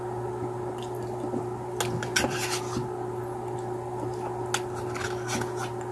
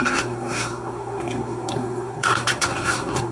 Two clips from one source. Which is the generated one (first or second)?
second